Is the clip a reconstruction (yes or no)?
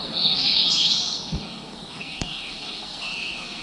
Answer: yes